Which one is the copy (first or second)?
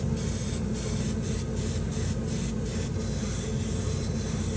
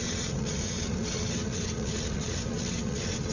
second